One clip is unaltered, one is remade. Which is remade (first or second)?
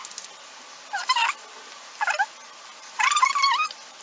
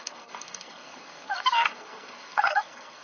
second